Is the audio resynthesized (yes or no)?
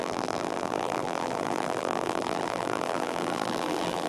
yes